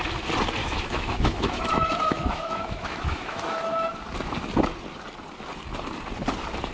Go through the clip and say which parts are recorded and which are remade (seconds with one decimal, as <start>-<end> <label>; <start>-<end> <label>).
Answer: 0.0-0.6 recorded; 0.6-4.0 remade; 4.0-6.7 recorded